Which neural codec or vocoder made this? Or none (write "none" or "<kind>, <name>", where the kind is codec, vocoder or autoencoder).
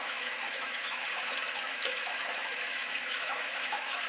autoencoder, DAC-VAE